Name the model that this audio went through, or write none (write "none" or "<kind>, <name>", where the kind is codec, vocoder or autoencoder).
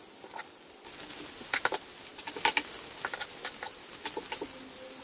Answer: none